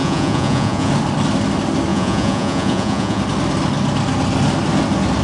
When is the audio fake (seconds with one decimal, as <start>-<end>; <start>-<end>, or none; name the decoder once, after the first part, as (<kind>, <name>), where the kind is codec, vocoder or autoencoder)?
0.0-0.9 (vocoder, Vocos); 1.9-3.2